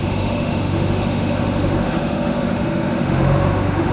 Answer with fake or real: fake